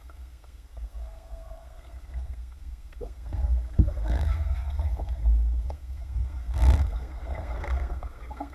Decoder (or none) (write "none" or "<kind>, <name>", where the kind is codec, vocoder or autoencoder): codec, SNAC